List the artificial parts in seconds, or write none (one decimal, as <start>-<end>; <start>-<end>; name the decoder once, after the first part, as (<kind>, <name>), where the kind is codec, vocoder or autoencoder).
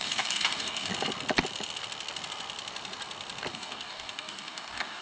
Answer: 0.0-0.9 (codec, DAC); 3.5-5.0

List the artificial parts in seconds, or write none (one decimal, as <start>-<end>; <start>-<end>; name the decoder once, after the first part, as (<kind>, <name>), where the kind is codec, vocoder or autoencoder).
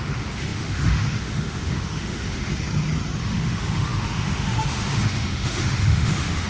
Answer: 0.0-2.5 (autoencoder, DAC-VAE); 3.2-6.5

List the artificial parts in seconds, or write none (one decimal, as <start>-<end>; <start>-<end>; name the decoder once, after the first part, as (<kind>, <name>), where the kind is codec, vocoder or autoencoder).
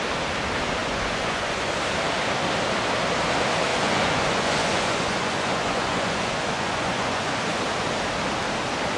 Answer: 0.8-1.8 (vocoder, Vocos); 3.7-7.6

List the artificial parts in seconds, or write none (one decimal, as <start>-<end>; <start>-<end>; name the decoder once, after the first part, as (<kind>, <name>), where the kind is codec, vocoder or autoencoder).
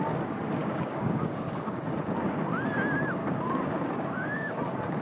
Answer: 0.6-1.8 (codec, DAC); 3.2-4.6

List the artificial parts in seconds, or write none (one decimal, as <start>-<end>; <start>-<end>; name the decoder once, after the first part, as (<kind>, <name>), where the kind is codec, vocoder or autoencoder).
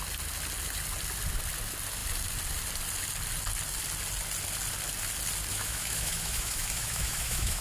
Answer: 5.5-7.6 (autoencoder, DAC-VAE)